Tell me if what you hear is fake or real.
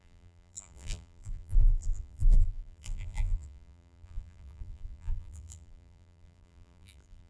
fake